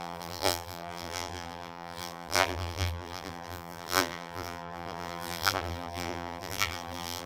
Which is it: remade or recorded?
remade